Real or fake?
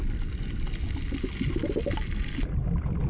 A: real